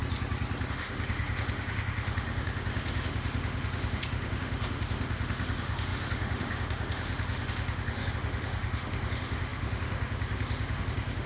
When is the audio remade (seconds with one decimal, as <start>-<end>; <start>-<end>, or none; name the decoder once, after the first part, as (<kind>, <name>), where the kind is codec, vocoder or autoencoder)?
0.7-11.3 (autoencoder, DAC-VAE)